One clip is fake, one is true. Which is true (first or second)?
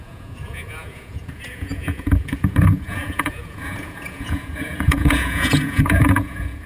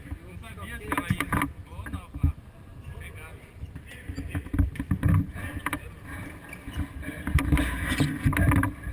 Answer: second